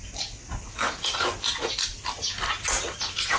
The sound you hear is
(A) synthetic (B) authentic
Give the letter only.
B